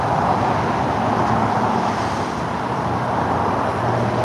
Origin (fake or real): real